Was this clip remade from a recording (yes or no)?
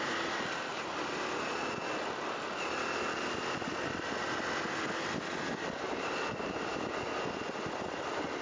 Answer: no